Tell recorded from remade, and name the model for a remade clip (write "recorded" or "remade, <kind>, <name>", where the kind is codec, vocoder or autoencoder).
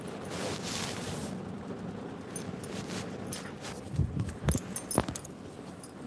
recorded